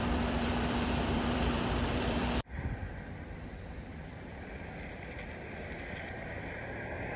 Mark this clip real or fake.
fake